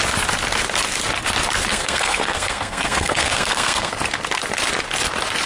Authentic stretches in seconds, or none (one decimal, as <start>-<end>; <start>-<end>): 0.0-1.7; 3.9-5.5